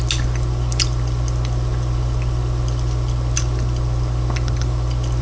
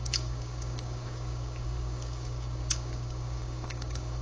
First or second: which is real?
first